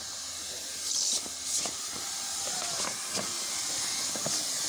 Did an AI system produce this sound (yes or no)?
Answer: no